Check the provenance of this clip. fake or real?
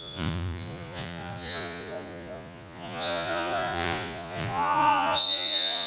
fake